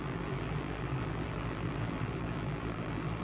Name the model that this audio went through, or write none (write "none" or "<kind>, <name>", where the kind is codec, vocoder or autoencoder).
vocoder, BigVGAN v2